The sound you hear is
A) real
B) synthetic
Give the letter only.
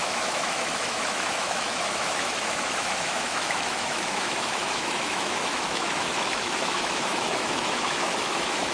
B